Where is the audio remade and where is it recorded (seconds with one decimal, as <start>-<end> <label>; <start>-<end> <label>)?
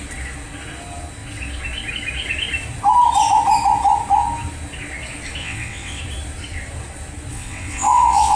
0.0-5.4 recorded; 5.4-6.0 remade; 6.0-7.3 recorded; 7.3-8.4 remade